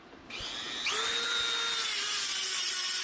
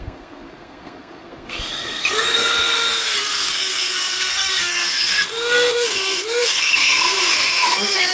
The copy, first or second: second